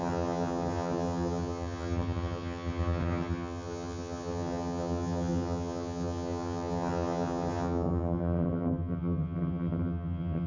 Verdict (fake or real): fake